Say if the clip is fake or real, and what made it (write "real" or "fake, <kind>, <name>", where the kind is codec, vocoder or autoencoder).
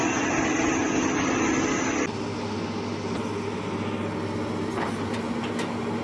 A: real